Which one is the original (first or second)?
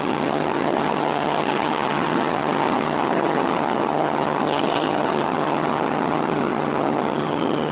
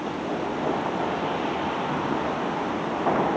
second